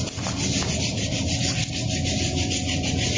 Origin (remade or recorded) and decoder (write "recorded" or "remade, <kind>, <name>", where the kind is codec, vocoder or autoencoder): recorded